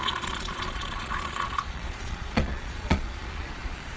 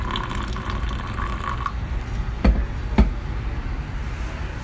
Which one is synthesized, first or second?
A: first